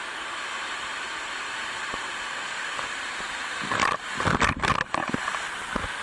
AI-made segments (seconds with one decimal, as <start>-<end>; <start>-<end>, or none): 2.3-2.9